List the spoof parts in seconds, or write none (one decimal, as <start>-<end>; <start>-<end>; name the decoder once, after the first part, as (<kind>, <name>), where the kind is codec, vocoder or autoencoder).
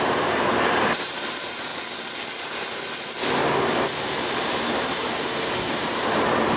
0.0-1.7 (vocoder, BigVGAN v2); 4.4-6.6